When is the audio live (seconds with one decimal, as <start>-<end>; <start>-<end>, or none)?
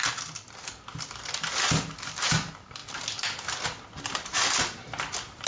0.0-5.5